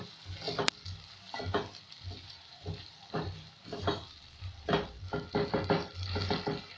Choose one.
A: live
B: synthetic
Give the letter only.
A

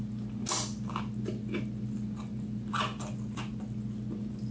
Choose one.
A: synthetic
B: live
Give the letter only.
B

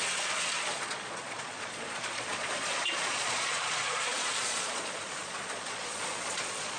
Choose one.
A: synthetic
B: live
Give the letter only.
A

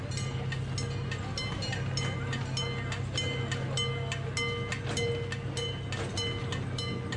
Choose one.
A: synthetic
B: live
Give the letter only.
B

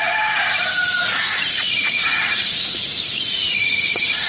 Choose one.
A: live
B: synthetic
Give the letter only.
B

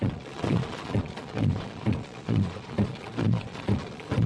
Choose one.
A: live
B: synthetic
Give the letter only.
B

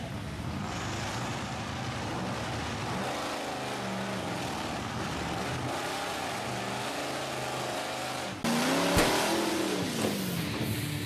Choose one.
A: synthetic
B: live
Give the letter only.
B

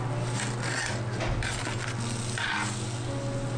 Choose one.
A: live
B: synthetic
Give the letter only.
A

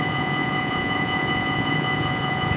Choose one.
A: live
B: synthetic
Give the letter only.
B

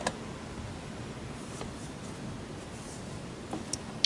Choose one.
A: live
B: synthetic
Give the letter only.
A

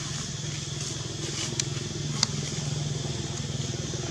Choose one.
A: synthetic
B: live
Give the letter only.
B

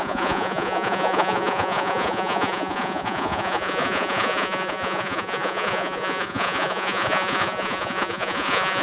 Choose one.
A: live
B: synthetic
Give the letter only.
B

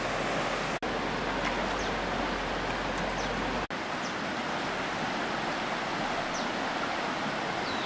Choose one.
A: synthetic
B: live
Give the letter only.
B